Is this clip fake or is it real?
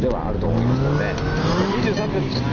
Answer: real